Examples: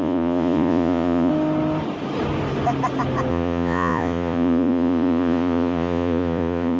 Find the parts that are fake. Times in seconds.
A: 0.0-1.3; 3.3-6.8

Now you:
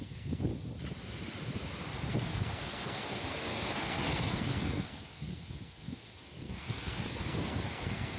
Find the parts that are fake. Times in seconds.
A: 0.0-0.5; 2.1-8.2

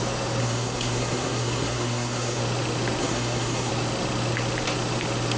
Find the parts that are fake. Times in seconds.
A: 0.4-2.4; 3.0-3.7

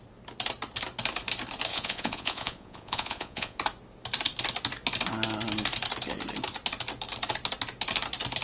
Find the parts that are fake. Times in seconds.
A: 1.7-3.6

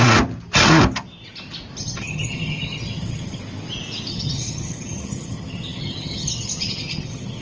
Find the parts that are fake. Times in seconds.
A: 1.8-3.4; 4.1-7.4

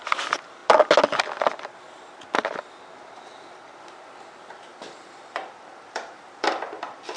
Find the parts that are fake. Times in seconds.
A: 4.7-7.2